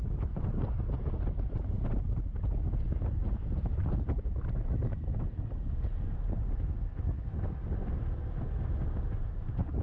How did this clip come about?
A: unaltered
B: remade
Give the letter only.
A